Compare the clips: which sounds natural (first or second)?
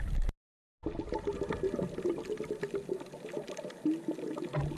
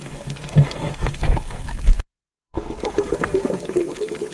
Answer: first